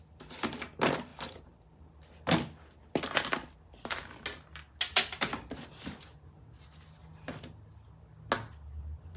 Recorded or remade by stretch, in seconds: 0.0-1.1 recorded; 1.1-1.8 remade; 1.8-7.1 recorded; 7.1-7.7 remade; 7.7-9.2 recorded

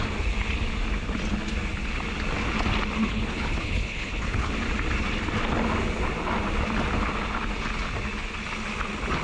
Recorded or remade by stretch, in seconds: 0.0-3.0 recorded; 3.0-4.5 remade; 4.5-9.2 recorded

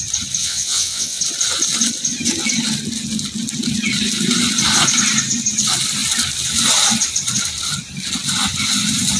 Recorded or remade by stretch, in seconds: 0.0-0.4 recorded; 0.4-1.2 remade; 1.2-9.2 recorded

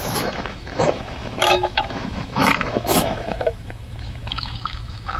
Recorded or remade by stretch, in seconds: 0.0-5.2 remade

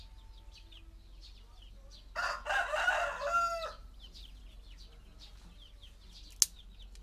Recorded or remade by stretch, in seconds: 0.0-3.8 recorded; 3.8-4.4 remade; 4.4-7.0 recorded

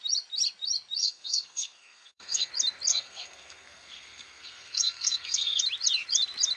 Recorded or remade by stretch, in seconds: 0.0-1.0 recorded; 1.0-2.5 remade; 2.5-2.9 recorded; 2.9-5.6 remade; 5.6-6.6 recorded

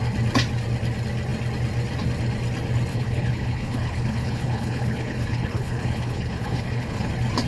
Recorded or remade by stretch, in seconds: 0.0-2.9 recorded; 2.9-7.1 remade; 7.1-7.5 recorded

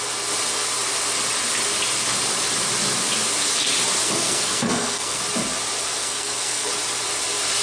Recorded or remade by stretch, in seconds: 0.0-4.0 recorded; 4.0-5.2 remade; 5.2-6.0 recorded; 6.0-6.7 remade; 6.7-7.6 recorded